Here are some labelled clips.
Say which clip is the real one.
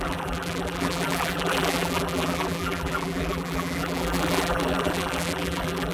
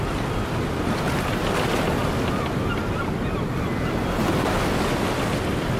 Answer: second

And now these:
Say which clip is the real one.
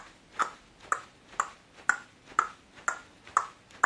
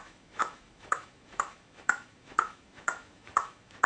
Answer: first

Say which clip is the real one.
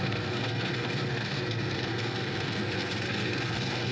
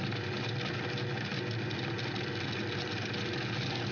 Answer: second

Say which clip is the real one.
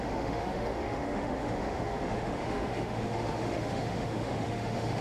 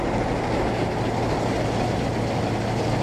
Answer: second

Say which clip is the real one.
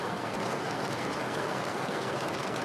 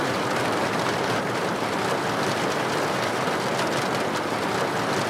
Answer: second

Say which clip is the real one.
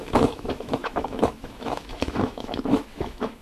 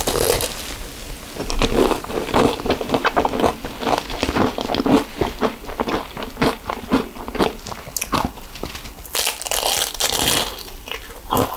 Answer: second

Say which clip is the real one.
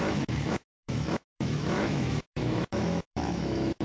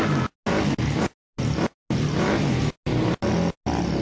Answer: second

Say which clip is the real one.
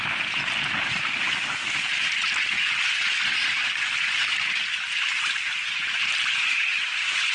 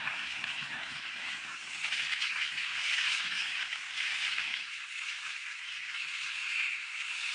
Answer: first